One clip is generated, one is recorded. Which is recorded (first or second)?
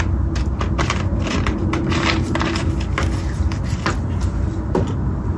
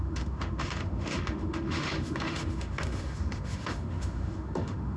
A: first